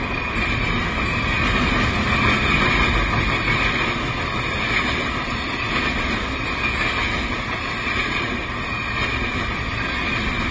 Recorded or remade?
recorded